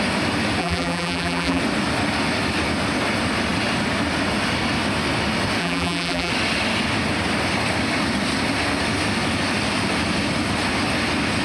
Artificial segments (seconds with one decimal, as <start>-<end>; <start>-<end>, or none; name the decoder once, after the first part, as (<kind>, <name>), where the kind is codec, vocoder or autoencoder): 0.6-1.6 (vocoder, BigVGAN v2); 5.6-6.3